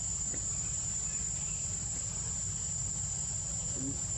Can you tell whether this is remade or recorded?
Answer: remade